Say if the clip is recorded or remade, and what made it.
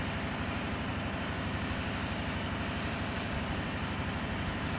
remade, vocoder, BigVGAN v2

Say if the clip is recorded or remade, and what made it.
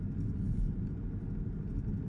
recorded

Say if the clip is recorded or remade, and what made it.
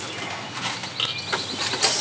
recorded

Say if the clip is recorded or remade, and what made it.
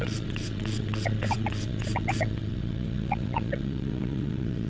remade, vocoder, WaveNeXt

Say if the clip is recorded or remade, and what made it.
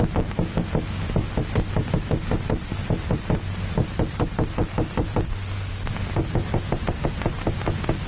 recorded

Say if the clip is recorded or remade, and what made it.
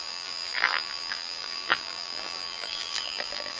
remade, vocoder, BigVGAN v2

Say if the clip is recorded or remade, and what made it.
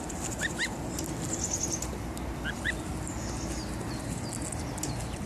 recorded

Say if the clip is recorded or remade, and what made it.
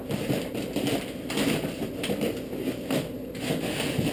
recorded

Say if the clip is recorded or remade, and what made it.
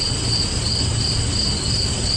recorded